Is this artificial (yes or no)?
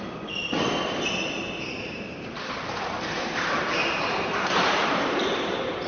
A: yes